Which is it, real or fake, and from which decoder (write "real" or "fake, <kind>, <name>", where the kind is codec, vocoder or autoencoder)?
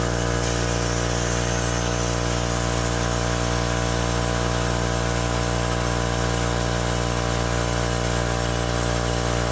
real